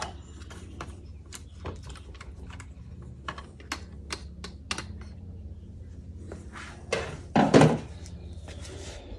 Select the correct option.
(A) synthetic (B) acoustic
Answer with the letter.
B